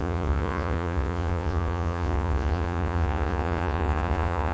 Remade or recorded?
remade